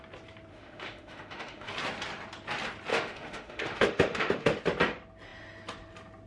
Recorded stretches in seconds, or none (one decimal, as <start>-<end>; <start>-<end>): 0.0-0.5; 1.7-2.9; 4.6-6.3